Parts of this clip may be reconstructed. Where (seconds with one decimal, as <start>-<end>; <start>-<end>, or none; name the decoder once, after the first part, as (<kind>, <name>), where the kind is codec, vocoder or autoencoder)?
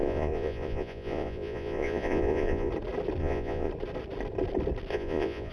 0.0-2.7 (vocoder, Vocos); 3.2-3.7; 4.9-5.5